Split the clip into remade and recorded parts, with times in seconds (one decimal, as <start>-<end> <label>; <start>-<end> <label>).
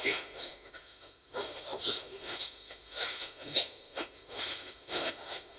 0.0-5.6 remade